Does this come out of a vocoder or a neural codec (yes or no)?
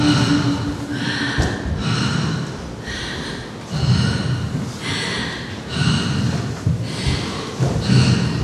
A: no